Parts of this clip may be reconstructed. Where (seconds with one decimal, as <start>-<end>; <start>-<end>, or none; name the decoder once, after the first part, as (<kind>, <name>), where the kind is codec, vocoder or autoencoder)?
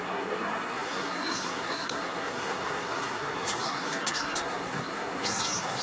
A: 0.0-5.8 (codec, SNAC)